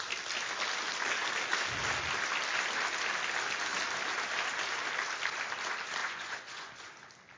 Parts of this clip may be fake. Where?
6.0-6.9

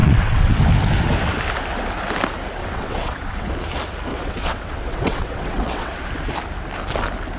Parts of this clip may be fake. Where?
0.0-0.6; 2.6-3.5; 4.1-5.9

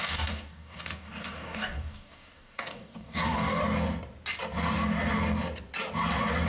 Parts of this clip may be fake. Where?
0.0-3.6

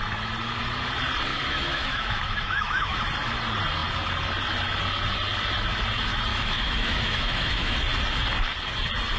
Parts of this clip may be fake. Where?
1.3-3.0; 6.3-7.8

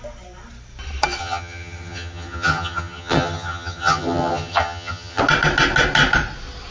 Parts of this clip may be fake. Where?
1.2-5.2

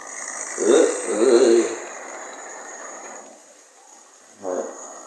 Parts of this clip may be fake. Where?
1.1-4.2